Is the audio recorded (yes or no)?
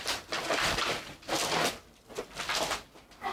yes